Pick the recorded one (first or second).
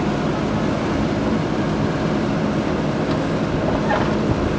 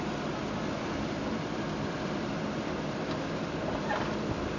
first